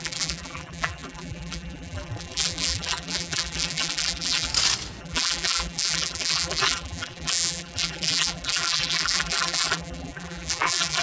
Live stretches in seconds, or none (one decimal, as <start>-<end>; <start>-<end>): 4.5-5.0